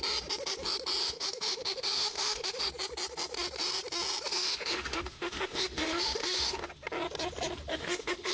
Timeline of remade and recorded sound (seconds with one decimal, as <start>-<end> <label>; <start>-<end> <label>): 0.0-1.0 recorded; 1.0-2.6 remade; 2.6-4.3 recorded; 4.3-6.7 remade; 6.7-7.7 recorded; 7.7-8.3 remade

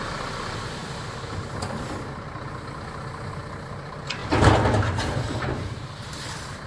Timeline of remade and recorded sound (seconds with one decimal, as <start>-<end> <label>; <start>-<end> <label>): 0.0-6.7 recorded

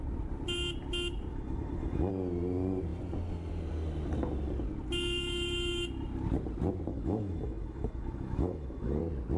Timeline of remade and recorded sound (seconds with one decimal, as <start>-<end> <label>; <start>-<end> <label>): 0.0-1.3 recorded; 1.3-2.1 remade; 2.1-6.9 recorded; 6.9-9.0 remade; 9.0-9.4 recorded

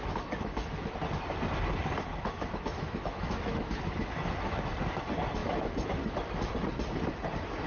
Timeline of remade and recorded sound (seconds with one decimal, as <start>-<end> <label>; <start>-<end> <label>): 0.0-0.9 remade; 0.9-2.1 recorded; 2.1-4.6 remade; 4.6-5.4 recorded; 5.4-6.5 remade; 6.5-7.7 recorded

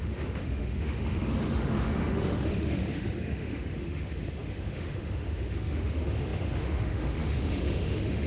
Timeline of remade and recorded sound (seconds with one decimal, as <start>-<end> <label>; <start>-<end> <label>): 0.0-8.3 remade

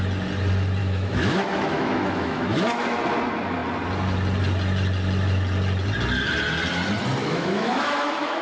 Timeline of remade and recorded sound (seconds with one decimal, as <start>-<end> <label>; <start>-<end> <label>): 0.0-0.8 recorded; 0.8-3.0 remade; 3.0-7.2 recorded; 7.2-8.4 remade

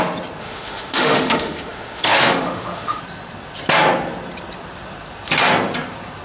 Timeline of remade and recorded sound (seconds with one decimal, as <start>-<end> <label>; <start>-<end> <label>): 0.0-0.4 recorded; 0.4-3.0 remade; 3.0-6.2 recorded

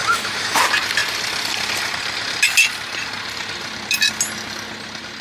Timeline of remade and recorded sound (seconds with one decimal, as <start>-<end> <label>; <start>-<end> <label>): 0.0-0.6 remade; 0.6-5.2 recorded